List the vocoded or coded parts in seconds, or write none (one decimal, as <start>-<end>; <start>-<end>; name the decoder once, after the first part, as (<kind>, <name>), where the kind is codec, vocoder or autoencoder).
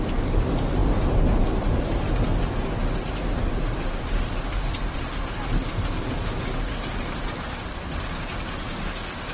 none